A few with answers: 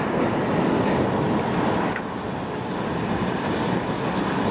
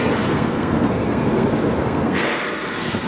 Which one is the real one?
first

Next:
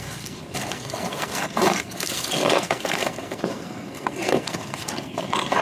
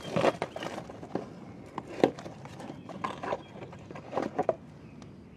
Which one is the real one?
second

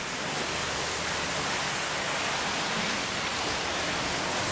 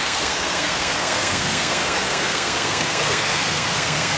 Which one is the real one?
first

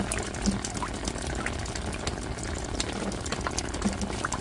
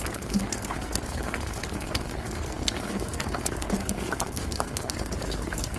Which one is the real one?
first